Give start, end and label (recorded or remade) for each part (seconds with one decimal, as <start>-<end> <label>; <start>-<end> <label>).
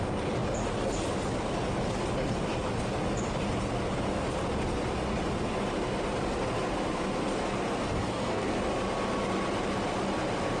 0.0-7.8 recorded; 7.8-8.6 remade; 8.6-10.6 recorded